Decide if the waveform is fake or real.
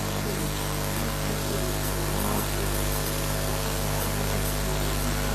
fake